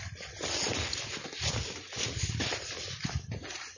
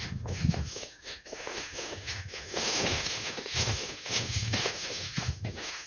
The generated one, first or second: second